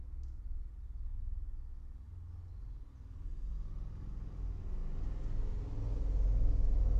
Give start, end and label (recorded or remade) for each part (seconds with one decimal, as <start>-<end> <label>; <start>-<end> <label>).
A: 0.0-7.0 recorded